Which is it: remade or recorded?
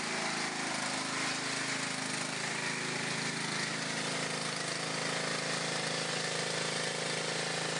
recorded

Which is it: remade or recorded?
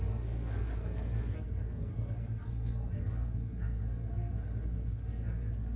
remade